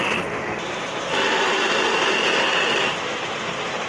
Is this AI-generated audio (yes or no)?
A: no